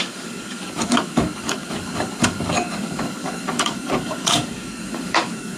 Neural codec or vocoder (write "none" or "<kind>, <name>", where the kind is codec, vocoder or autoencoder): codec, DAC